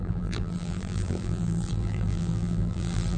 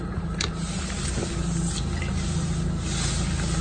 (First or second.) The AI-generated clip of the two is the first